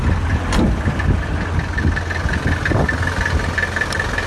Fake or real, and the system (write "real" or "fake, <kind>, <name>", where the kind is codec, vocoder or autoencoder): real